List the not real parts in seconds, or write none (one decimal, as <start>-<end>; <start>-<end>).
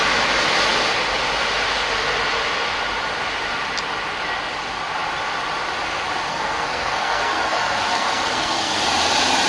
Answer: 6.3-8.8